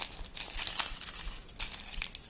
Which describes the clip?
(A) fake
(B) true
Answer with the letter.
B